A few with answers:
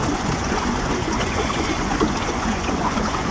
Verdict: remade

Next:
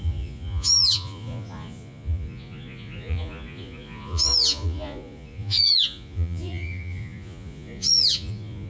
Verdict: remade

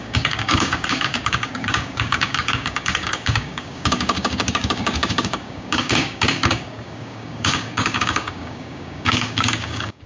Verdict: remade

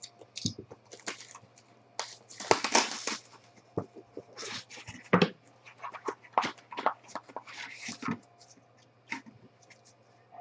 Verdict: recorded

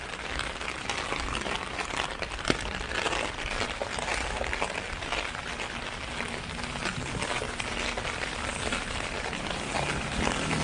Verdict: recorded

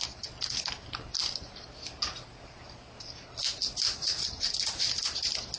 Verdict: recorded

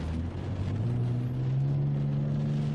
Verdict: recorded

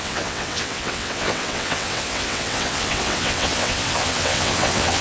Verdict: remade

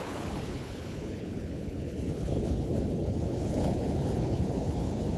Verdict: remade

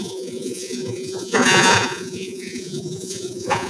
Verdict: remade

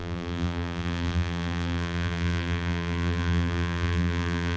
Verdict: remade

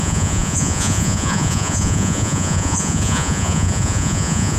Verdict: remade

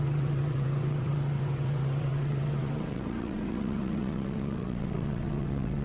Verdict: remade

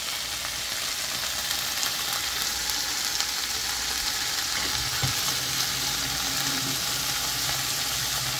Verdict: recorded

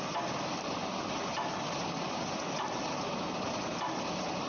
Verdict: recorded